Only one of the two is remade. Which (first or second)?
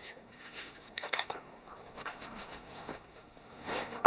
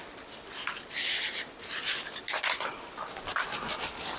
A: first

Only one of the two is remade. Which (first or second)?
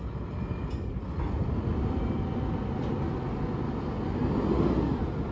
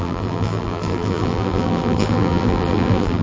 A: second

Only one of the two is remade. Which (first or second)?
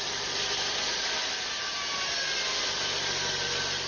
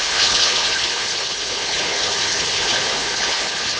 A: second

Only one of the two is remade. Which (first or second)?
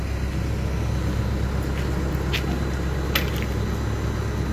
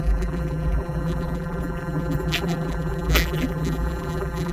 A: second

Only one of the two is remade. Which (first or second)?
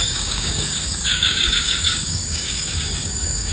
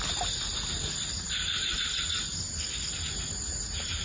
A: first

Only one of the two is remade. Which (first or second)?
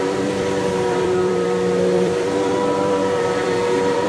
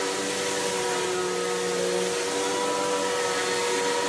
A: first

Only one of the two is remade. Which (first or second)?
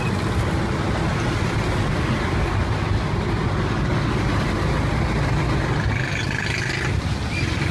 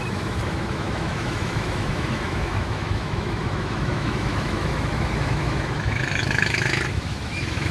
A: second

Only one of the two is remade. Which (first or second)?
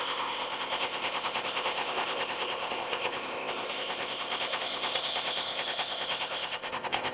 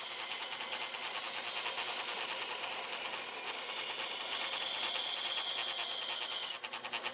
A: first